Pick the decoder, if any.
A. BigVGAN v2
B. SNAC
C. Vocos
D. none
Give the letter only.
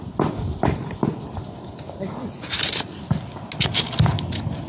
D